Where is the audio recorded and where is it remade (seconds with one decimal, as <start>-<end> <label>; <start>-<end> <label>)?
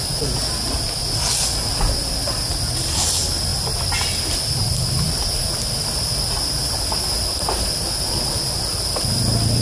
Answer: 0.0-9.6 recorded